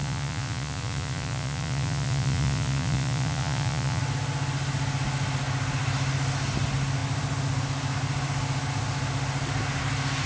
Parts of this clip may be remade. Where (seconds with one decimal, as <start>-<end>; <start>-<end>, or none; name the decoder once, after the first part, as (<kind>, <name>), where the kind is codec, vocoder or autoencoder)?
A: 0.0-4.0 (vocoder, Vocos)